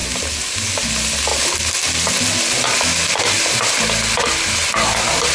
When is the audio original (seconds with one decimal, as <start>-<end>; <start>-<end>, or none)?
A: 0.0-5.3